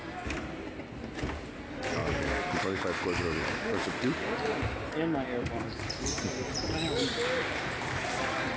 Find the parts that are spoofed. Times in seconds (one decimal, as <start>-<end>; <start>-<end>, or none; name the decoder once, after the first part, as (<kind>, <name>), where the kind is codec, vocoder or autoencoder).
none